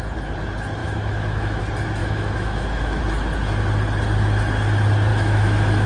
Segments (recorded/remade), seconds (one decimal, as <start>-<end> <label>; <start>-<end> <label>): 0.0-0.8 recorded; 0.8-1.6 remade; 1.6-2.0 recorded; 2.0-3.0 remade; 3.0-5.1 recorded; 5.1-5.9 remade